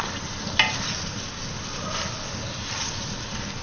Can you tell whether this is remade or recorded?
recorded